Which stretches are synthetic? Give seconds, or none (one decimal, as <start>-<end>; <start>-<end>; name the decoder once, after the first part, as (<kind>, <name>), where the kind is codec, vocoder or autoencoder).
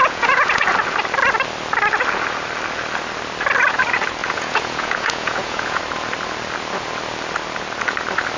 0.0-0.7 (vocoder, Vocos); 4.2-5.8